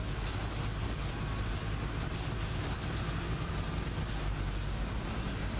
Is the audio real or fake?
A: real